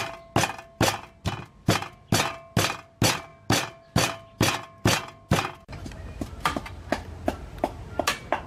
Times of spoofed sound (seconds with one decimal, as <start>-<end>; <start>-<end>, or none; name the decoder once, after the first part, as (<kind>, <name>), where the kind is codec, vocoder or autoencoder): none